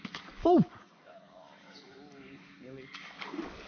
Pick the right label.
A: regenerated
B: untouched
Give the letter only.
A